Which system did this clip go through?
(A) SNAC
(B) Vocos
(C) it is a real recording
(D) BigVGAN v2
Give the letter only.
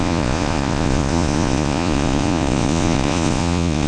B